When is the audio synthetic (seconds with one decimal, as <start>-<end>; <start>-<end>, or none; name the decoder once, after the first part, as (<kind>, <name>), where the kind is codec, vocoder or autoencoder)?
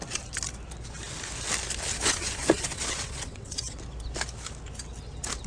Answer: 1.9-3.8 (vocoder, WaveNeXt)